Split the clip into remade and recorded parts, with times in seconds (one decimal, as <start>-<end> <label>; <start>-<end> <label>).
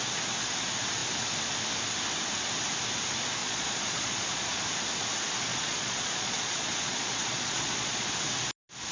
0.0-3.4 recorded; 3.4-4.6 remade; 4.6-5.5 recorded; 5.5-8.1 remade; 8.1-8.9 recorded